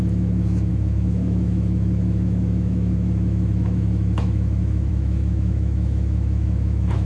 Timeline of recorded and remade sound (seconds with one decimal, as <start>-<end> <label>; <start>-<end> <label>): 0.0-7.0 remade